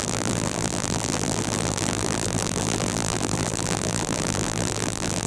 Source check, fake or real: fake